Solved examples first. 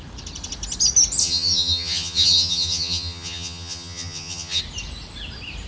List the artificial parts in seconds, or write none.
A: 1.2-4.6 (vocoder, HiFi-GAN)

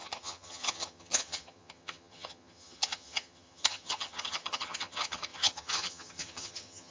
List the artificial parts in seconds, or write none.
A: 0.0-6.9 (vocoder, HiFi-GAN)

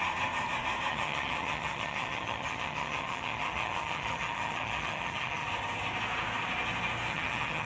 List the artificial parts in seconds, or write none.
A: 0.9-5.5 (vocoder, HiFi-GAN); 7.1-7.7

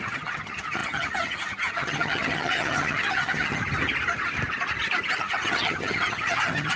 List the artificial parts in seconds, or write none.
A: 0.0-3.6 (vocoder, HiFi-GAN); 5.2-6.8

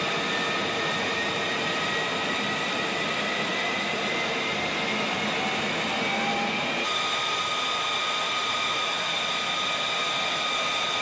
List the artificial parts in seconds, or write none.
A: none